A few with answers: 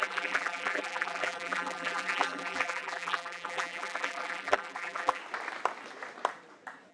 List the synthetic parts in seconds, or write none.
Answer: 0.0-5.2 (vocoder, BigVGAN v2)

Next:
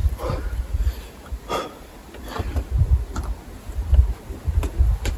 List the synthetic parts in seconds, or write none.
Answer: none

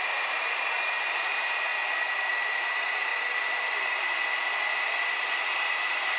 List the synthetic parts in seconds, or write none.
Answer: 0.0-1.7 (vocoder, BigVGAN v2); 2.4-3.1; 5.7-6.2

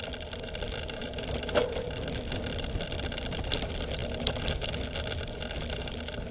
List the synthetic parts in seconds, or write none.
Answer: 1.0-1.8 (vocoder, BigVGAN v2)

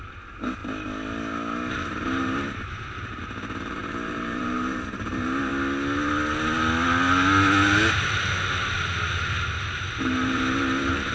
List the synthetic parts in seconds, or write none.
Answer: 0.0-0.6 (vocoder, BigVGAN v2); 1.7-5.5; 9.9-11.1

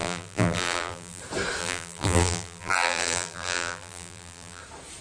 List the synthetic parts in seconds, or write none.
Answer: 0.0-1.2 (vocoder, BigVGAN v2); 1.6-4.6

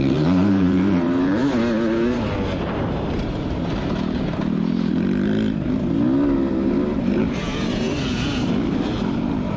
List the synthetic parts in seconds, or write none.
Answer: 0.0-1.4 (vocoder, BigVGAN v2); 2.7-4.9; 7.0-9.6

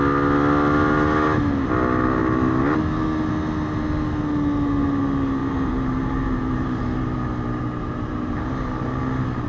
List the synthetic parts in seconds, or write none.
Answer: 5.4-9.0 (vocoder, BigVGAN v2)